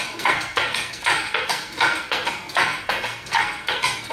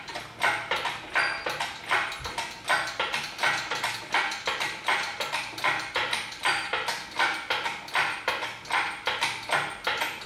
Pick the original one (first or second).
second